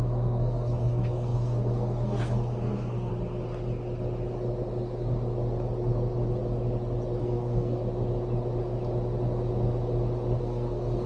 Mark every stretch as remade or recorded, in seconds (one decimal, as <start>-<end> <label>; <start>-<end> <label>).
0.0-3.1 remade; 3.1-7.2 recorded; 7.2-7.8 remade; 7.8-10.4 recorded; 10.4-11.1 remade